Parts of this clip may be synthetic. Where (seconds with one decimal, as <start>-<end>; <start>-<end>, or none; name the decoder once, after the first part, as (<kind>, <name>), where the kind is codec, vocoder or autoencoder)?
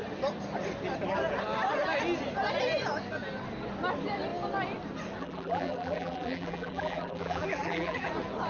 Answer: 5.2-8.1 (vocoder, BigVGAN v2)